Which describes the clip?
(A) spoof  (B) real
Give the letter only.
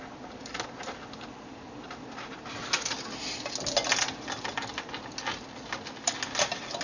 B